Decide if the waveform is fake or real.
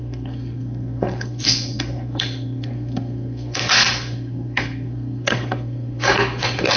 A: fake